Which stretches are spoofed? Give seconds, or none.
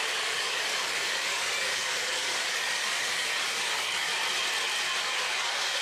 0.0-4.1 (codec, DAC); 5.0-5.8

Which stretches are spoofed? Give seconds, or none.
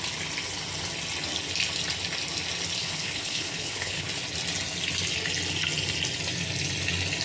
2.8-4.1 (codec, HILCodec)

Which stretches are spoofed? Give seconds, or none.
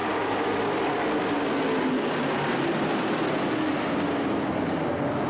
none